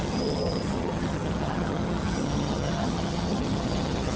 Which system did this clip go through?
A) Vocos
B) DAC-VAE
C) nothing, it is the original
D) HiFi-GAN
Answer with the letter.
D